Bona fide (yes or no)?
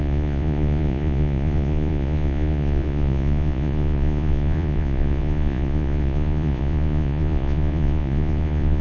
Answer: no